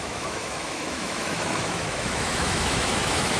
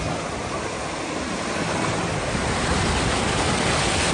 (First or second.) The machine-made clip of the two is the first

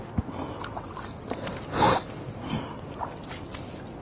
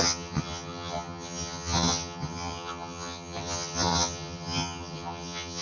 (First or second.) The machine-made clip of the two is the second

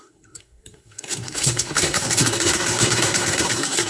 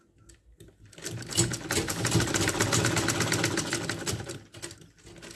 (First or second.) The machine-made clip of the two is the first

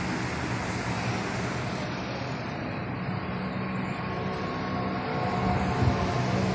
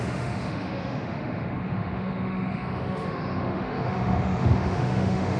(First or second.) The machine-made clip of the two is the second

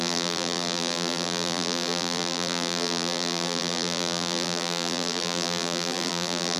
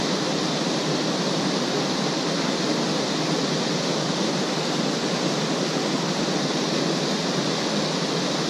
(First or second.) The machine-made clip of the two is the first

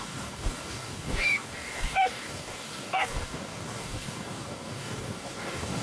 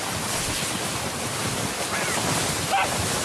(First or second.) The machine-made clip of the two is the first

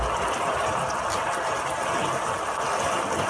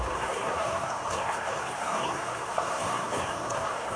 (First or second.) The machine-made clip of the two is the second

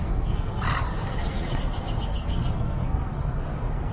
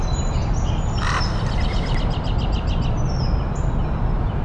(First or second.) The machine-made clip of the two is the first